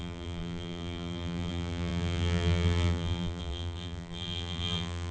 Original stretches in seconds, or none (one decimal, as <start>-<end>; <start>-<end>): none